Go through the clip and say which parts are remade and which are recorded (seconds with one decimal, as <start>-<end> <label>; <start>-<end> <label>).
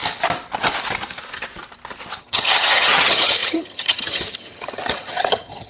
0.0-2.2 recorded; 2.2-5.7 remade